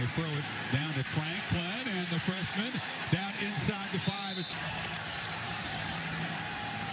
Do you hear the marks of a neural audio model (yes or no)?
yes